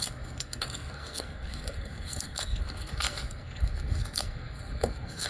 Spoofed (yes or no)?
yes